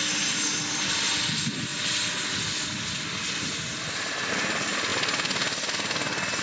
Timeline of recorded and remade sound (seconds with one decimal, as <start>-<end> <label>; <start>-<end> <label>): 0.0-6.4 recorded